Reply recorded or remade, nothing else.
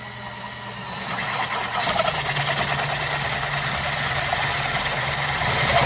recorded